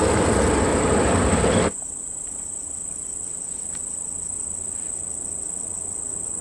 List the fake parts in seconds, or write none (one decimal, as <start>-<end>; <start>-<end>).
0.7-4.5